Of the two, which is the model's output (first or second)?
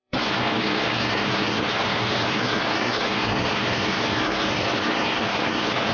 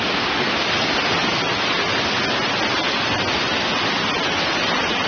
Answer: first